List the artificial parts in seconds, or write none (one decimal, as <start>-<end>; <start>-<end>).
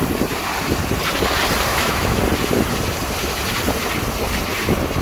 1.7-2.2